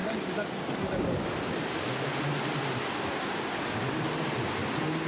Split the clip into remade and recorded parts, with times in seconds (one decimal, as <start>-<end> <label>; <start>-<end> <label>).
0.0-5.1 recorded